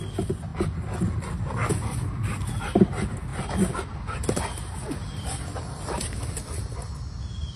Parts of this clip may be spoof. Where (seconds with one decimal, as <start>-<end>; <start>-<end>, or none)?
3.3-6.2